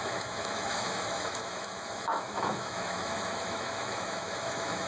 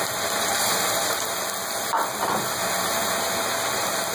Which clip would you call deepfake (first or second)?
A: first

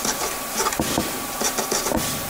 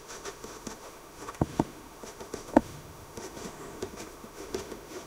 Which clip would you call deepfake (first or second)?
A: second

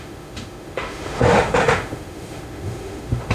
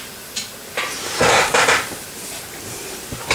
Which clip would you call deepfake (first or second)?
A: first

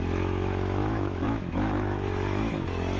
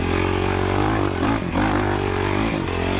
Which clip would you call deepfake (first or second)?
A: first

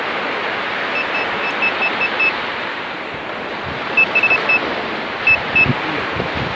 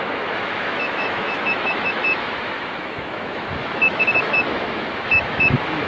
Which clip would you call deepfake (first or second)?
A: second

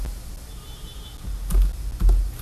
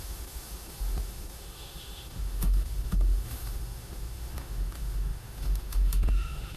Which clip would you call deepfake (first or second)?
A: second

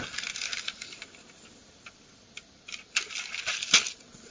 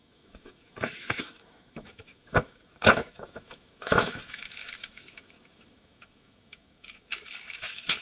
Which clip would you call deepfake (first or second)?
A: second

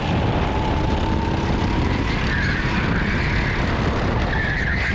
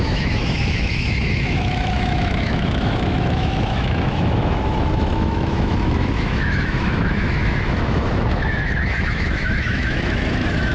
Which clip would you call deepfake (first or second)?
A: second